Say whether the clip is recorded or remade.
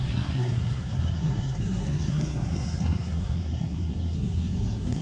remade